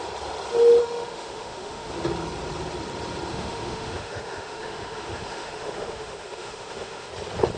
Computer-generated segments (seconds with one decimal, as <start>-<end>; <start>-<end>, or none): 0.8-1.9; 3.3-7.1